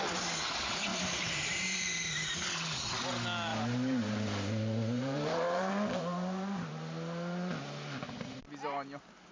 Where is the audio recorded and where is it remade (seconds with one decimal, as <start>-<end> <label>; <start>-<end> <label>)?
0.0-0.9 recorded; 0.9-2.1 remade; 2.1-3.5 recorded; 3.5-5.7 remade; 5.7-9.3 recorded